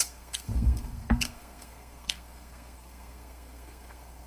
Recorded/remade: remade